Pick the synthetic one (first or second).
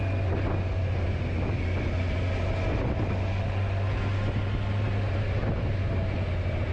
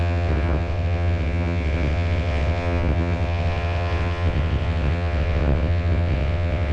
second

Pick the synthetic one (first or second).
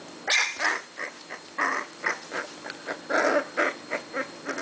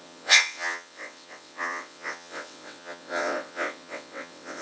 second